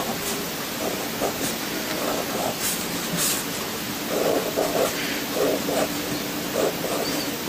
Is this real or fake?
real